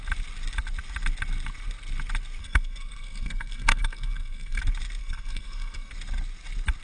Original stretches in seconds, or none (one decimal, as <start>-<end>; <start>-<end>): 0.0-2.4; 4.6-5.0; 5.9-6.8